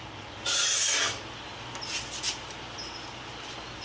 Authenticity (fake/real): real